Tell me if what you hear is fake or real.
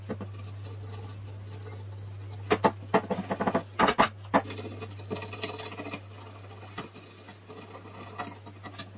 real